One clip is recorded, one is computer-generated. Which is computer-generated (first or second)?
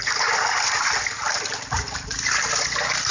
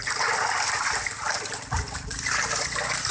second